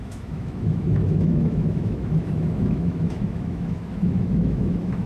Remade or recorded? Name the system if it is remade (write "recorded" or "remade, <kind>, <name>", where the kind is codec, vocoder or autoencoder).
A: remade, autoencoder, DAC-VAE